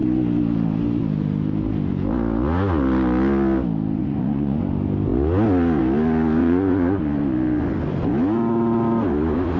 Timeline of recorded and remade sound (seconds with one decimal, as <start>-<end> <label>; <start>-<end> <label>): 0.0-4.0 recorded; 4.0-4.6 remade; 4.6-6.4 recorded; 6.4-7.0 remade; 7.0-9.6 recorded